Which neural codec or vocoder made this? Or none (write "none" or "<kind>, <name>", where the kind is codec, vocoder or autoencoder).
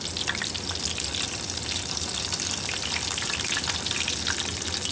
none